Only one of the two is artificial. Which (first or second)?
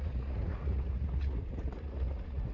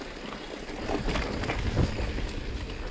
first